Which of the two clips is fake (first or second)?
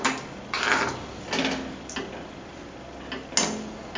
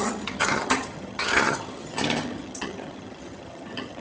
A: second